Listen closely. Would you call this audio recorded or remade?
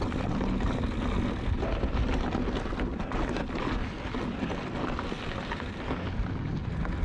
recorded